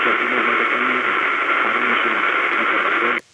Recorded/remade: remade